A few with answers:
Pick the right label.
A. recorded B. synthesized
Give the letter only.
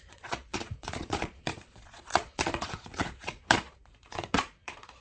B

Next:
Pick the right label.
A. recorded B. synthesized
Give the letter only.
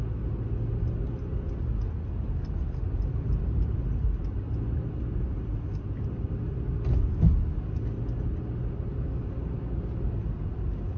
A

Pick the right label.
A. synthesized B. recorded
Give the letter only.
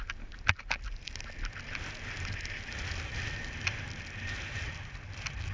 B